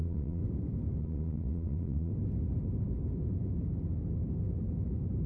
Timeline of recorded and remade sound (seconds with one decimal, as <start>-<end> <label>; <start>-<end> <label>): 0.0-0.4 remade; 0.4-1.0 recorded; 1.0-2.1 remade; 2.1-5.3 recorded